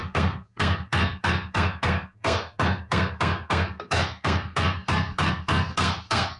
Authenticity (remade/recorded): remade